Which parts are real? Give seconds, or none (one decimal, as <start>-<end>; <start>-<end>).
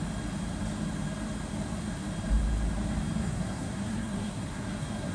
0.0-3.2